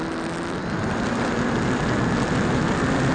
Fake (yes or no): no